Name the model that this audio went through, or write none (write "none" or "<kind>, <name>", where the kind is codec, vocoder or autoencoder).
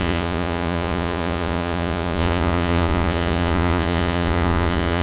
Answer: vocoder, Vocos